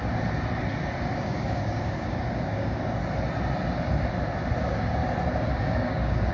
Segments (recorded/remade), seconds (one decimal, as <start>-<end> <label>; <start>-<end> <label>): 0.0-1.2 recorded; 1.2-3.0 remade; 3.0-4.6 recorded; 4.6-5.0 remade; 5.0-5.5 recorded; 5.5-6.3 remade